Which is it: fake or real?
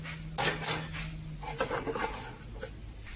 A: real